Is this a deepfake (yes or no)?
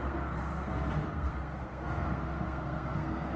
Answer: yes